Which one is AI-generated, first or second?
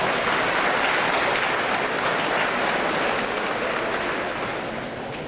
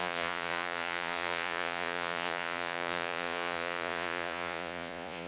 second